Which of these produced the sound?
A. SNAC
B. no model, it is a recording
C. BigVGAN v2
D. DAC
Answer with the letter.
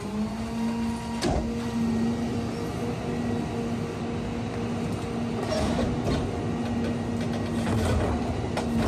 B